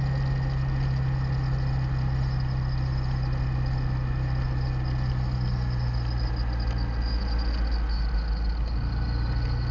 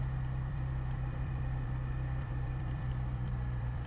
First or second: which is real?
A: first